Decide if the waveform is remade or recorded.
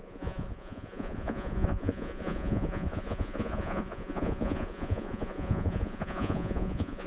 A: remade